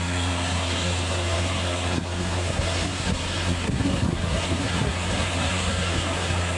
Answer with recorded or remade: remade